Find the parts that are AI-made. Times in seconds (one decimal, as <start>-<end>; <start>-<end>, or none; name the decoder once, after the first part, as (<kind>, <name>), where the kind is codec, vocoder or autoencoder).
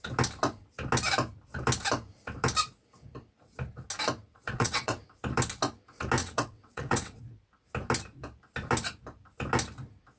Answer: 4.2-5.0 (vocoder, WaveNeXt); 6.2-7.2